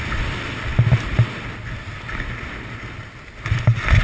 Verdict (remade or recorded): recorded